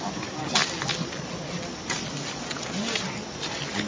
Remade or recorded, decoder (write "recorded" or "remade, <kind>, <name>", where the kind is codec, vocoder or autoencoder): recorded